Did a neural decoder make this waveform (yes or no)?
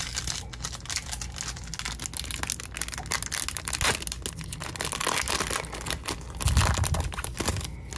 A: no